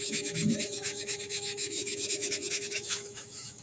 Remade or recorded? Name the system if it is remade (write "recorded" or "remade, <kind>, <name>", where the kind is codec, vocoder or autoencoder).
remade, autoencoder, DAC-VAE